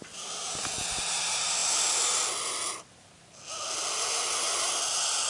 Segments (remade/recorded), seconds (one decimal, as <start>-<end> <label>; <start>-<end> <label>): 0.0-5.3 recorded